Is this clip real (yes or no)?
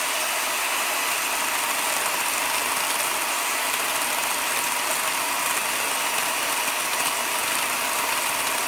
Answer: yes